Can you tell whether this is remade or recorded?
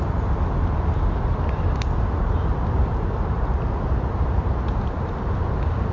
recorded